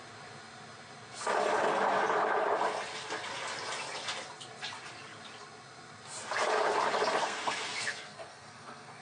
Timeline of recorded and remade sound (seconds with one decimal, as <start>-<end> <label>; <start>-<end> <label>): 0.0-7.2 recorded; 7.2-9.0 remade